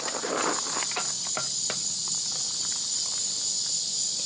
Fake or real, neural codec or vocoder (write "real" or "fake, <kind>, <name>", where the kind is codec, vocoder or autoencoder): real